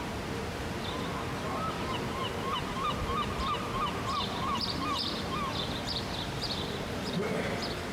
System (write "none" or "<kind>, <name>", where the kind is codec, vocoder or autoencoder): vocoder, BigVGAN v2